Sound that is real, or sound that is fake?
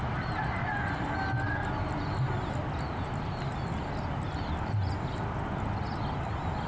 real